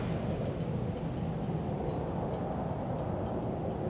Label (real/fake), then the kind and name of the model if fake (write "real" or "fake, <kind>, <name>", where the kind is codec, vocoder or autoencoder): real